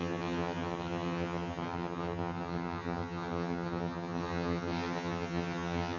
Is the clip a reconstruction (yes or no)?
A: yes